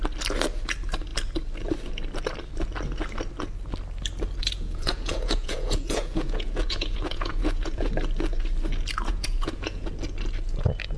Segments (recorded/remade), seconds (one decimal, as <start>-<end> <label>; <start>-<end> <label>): 0.0-4.4 recorded; 4.4-7.9 remade; 7.9-9.1 recorded; 9.1-9.9 remade; 9.9-11.0 recorded